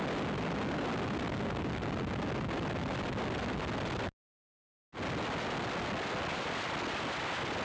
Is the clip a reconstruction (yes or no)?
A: no